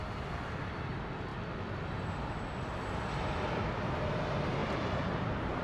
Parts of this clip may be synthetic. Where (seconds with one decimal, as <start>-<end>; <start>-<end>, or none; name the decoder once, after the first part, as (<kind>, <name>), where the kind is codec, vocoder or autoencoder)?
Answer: 4.6-5.6 (vocoder, BigVGAN v2)